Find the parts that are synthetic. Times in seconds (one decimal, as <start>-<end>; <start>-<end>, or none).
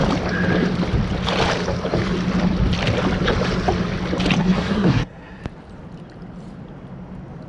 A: 4.4-5.4